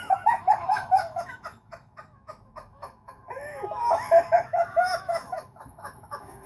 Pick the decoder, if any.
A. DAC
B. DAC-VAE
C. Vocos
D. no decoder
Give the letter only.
B